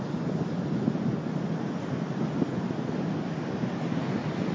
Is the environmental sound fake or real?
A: real